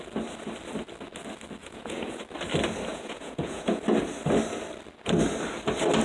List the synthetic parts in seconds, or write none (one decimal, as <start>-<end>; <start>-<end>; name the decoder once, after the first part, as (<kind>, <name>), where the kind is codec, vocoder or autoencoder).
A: 1.6-2.2 (vocoder, Vocos); 2.9-3.8